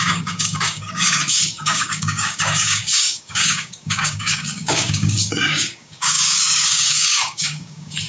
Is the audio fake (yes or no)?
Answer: yes